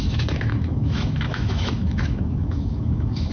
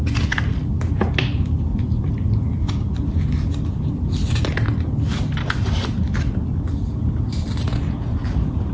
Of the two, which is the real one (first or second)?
second